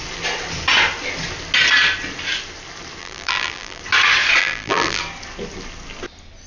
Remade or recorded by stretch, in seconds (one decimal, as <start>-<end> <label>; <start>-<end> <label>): 0.0-3.0 recorded; 3.0-3.8 remade; 3.8-4.4 recorded; 4.4-5.0 remade; 5.0-6.5 recorded